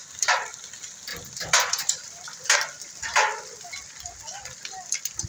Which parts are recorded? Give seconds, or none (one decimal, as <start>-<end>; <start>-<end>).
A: 0.7-1.1; 3.9-5.3